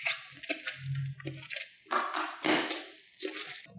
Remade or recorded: recorded